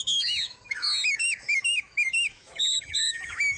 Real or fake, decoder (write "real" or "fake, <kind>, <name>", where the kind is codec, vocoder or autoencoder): fake, autoencoder, DAC-VAE